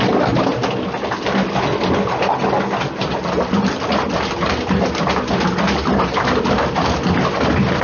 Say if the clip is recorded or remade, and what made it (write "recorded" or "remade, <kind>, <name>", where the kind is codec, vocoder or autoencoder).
recorded